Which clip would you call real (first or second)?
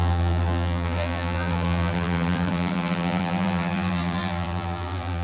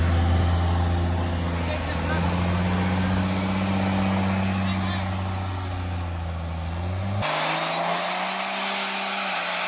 second